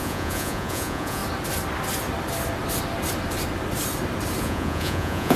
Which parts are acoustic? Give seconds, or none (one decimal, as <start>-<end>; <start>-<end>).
1.2-4.4